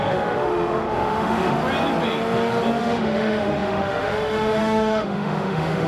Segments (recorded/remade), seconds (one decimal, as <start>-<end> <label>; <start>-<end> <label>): 0.0-1.5 remade; 1.5-2.8 recorded; 2.8-5.9 remade